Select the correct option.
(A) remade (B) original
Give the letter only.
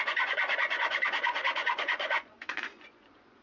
A